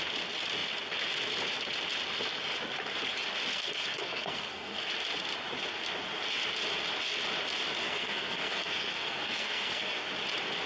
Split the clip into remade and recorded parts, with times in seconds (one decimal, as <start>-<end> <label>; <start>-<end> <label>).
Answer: 0.0-3.5 recorded; 3.5-4.9 remade; 4.9-7.8 recorded; 7.8-10.1 remade; 10.1-10.7 recorded